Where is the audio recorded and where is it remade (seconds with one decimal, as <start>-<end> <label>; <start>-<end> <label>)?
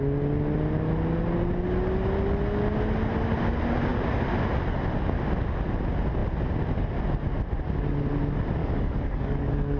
0.0-8.6 recorded; 8.6-9.8 remade